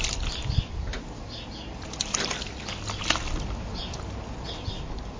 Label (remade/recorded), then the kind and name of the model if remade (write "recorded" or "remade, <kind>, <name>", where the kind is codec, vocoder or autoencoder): recorded